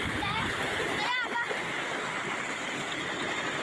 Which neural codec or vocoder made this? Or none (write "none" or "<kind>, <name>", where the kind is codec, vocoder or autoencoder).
none